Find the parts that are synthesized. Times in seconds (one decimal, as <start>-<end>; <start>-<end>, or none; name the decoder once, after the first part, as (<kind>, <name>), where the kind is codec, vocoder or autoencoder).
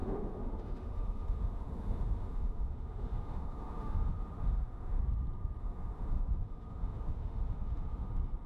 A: 0.0-5.0 (autoencoder, DAC-VAE); 5.6-8.1